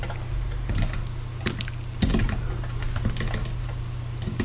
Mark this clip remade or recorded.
recorded